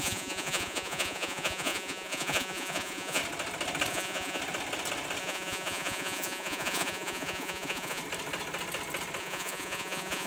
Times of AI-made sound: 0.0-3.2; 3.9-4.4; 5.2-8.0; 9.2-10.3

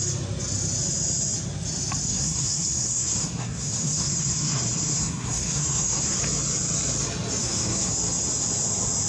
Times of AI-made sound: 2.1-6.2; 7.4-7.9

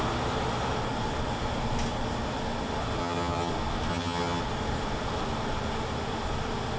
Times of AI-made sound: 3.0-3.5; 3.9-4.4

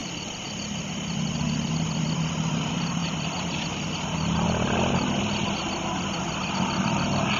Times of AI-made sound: none